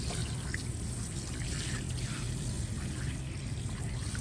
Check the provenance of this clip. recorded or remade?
recorded